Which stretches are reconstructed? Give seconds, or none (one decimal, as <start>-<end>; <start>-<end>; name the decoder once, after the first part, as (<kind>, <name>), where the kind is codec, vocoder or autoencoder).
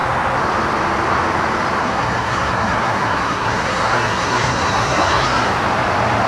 1.8-5.5 (codec, SNAC)